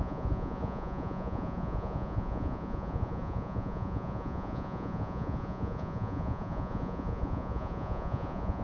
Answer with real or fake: fake